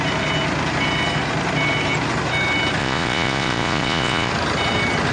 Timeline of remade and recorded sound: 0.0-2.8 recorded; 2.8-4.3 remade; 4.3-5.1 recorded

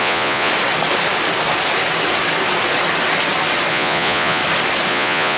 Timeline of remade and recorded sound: 0.0-0.5 remade; 0.5-3.7 recorded; 3.7-4.4 remade; 4.4-4.9 recorded; 4.9-5.4 remade

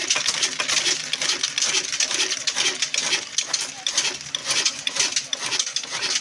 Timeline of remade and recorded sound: 0.0-4.4 recorded; 4.4-5.0 remade; 5.0-6.2 recorded

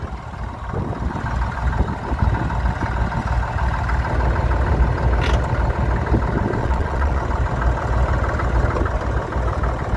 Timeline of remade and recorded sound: 0.0-6.6 recorded; 6.6-7.2 remade; 7.2-10.0 recorded

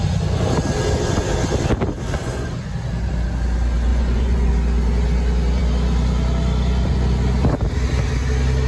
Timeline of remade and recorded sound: 0.0-2.2 recorded; 2.2-2.7 remade; 2.7-3.9 recorded; 3.9-4.5 remade; 4.5-8.7 recorded

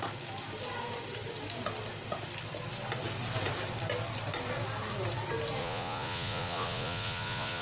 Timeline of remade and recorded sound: 0.0-5.6 recorded; 5.6-7.6 remade

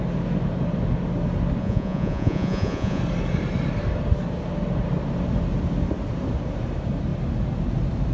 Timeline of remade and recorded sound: 0.0-1.6 recorded; 1.6-3.0 remade; 3.0-8.1 recorded